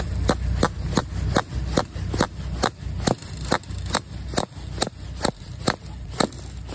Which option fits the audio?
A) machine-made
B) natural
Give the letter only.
B